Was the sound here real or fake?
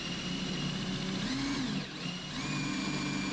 real